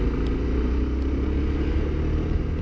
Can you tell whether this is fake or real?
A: real